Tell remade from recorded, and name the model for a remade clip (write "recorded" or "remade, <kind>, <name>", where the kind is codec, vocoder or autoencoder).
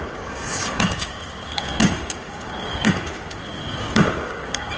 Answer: remade, codec, DAC